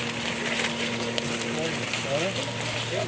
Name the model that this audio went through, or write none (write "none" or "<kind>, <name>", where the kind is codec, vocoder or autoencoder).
none